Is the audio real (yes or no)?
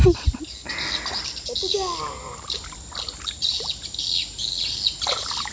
yes